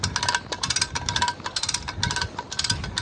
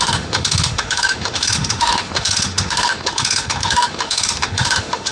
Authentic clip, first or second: first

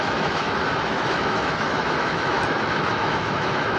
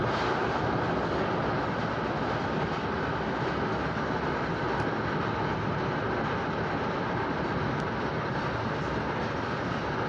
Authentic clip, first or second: second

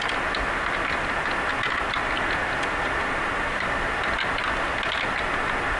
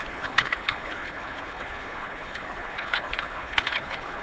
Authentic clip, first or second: first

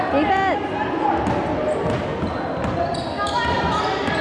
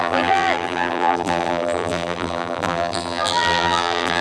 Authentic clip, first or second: first